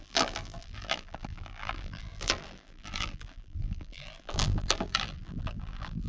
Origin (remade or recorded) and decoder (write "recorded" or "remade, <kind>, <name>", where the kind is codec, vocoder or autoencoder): remade, vocoder, BigVGAN v2